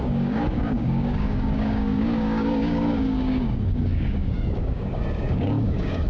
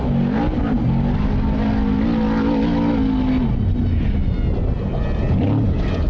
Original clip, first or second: second